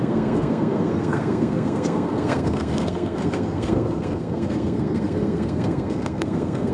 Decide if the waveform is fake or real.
fake